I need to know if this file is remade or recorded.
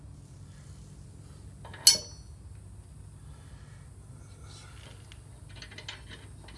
recorded